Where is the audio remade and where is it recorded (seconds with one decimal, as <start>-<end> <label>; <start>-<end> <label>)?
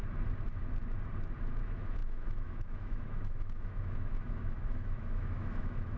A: 0.0-1.6 recorded; 1.6-6.0 remade